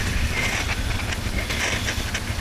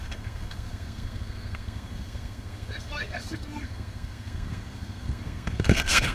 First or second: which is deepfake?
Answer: second